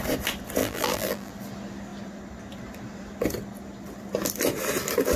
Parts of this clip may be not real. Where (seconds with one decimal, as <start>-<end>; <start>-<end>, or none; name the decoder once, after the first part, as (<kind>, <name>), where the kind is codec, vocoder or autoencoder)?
0.6-1.3 (vocoder, BigVGAN v2)